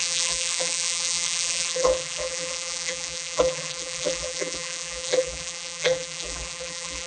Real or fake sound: fake